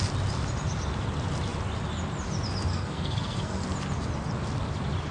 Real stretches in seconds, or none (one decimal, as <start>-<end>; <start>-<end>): 0.0-2.7; 3.6-5.1